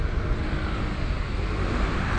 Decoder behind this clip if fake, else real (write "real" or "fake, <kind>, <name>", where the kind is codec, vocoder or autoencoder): real